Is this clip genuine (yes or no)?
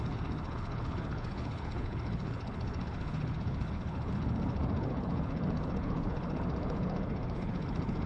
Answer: no